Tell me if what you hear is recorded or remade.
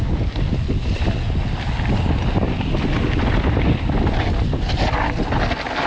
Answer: recorded